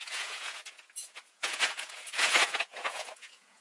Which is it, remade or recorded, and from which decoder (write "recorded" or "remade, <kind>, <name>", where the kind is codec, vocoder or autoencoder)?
remade, vocoder, Vocos